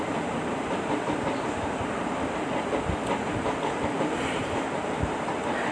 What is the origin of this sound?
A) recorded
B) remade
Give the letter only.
A